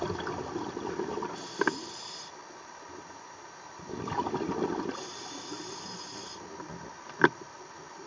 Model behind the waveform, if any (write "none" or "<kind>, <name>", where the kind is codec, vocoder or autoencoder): none